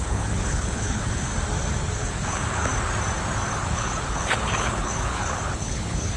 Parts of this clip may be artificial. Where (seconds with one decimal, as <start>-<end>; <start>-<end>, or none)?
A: 0.0-1.3; 2.0-2.7; 3.6-6.2

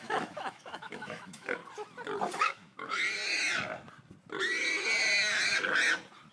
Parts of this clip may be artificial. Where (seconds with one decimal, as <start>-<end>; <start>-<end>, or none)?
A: 0.0-1.6; 2.4-3.0

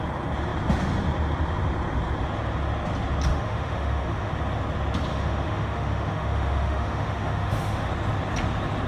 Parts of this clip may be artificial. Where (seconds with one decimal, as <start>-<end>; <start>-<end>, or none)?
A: 3.3-4.3; 5.1-7.9